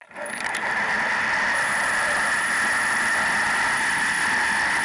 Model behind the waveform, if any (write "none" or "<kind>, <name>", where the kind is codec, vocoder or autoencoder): none